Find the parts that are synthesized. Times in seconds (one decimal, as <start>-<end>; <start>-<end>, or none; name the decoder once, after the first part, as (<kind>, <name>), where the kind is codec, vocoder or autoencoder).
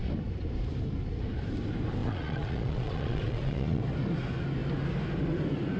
2.0-3.8 (vocoder, Vocos)